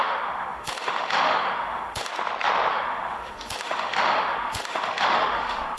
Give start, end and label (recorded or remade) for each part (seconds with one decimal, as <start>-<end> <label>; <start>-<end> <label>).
0.0-2.1 remade; 2.1-2.7 recorded; 2.7-5.8 remade